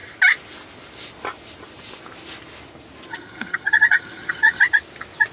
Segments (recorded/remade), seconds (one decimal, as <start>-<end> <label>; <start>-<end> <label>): 0.0-3.1 recorded; 3.1-4.6 remade; 4.6-5.3 recorded